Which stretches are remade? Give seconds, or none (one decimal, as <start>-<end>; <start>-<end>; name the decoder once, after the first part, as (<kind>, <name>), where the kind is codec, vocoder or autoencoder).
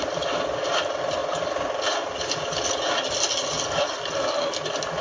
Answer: none